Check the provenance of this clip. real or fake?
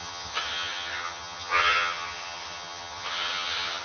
fake